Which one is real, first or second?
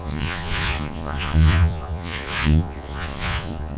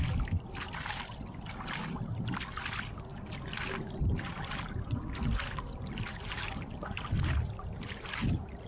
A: second